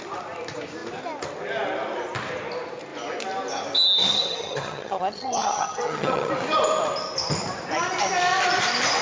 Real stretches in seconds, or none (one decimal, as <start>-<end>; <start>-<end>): 0.0-4.0; 6.3-9.0